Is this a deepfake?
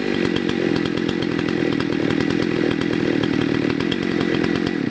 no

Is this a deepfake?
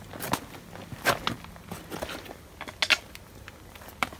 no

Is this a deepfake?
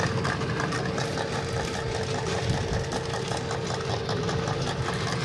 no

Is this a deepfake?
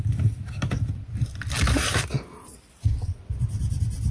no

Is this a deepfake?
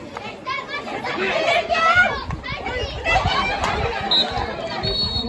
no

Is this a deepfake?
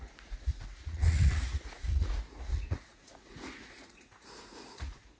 yes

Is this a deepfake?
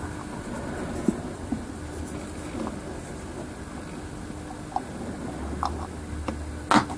no